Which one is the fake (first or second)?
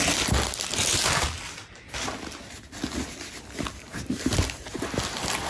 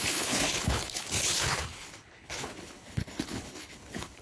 second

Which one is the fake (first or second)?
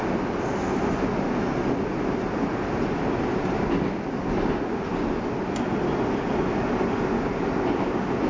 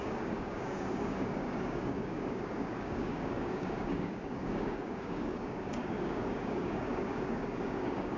second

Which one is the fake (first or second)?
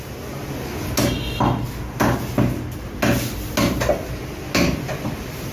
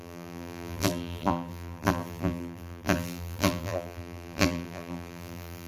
second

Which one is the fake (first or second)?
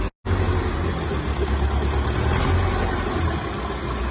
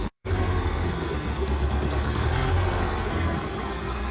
second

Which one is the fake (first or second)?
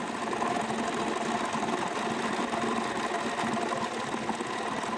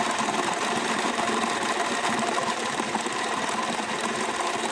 second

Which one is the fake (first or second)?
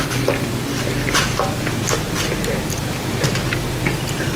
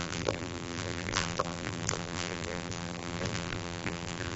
second